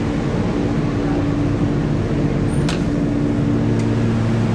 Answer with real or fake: real